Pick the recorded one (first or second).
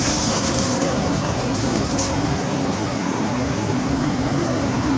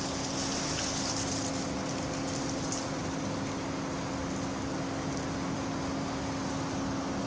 second